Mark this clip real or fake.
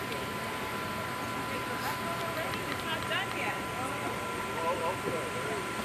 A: real